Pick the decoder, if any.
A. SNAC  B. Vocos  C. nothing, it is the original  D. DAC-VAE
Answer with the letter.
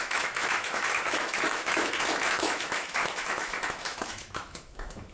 D